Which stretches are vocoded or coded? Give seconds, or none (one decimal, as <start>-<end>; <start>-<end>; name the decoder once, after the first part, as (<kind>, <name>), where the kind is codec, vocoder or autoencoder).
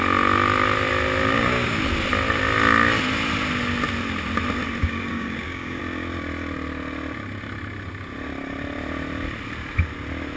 1.3-1.8 (codec, DAC); 4.8-5.8